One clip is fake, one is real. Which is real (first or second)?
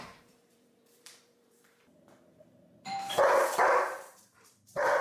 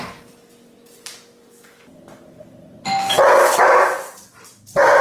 second